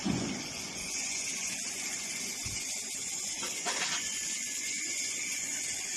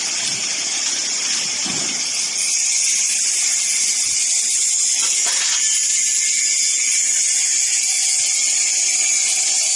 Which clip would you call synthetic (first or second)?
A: first